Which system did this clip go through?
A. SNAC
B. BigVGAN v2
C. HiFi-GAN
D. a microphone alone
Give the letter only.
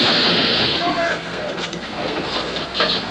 A